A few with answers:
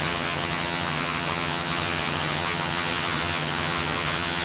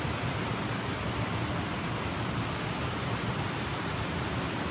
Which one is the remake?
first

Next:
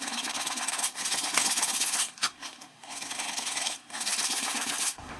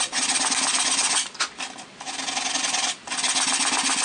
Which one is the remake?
first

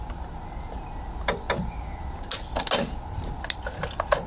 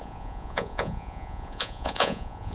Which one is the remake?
second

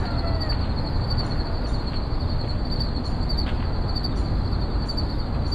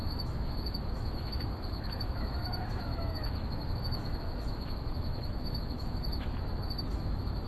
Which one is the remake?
second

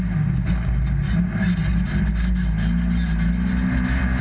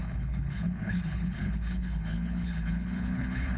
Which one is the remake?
second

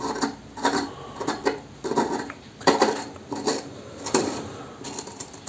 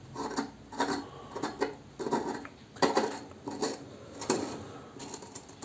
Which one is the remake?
first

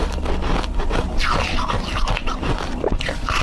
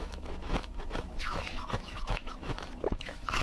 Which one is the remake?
second